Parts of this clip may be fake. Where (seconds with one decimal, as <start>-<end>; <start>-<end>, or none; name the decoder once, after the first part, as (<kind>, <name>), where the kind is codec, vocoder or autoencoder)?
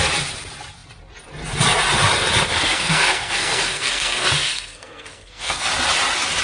2.5-5.7 (codec, SNAC)